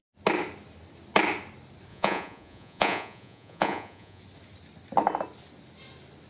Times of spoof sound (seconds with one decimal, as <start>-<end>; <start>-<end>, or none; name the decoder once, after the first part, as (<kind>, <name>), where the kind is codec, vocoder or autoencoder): 1.9-4.2 (vocoder, Vocos)